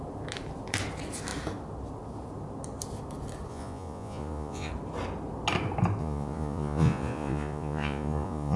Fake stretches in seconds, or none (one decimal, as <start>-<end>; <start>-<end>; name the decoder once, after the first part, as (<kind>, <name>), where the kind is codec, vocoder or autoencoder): 3.5-4.7 (vocoder, Vocos); 6.0-8.6